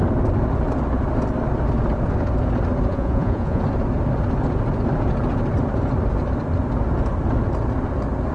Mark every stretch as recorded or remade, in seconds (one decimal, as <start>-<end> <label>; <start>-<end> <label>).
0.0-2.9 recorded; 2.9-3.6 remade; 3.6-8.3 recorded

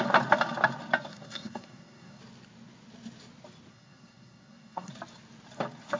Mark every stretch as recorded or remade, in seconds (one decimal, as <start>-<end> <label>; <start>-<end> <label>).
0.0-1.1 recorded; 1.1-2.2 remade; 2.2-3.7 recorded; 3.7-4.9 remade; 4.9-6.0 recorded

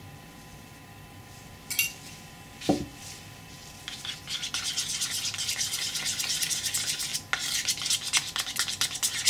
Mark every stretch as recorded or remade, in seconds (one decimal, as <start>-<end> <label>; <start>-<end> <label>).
0.0-2.9 recorded; 2.9-6.4 remade; 6.4-9.3 recorded

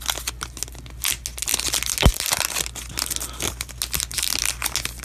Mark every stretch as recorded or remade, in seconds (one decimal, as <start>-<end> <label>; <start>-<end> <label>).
0.0-5.0 recorded

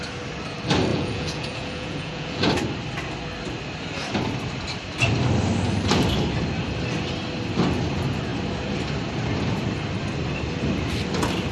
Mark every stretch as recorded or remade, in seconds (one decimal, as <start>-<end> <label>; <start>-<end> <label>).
0.0-0.9 recorded; 0.9-2.5 remade; 2.5-11.5 recorded